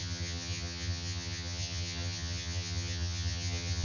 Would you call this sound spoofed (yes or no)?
yes